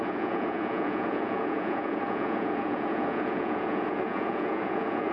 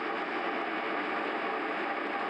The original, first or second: second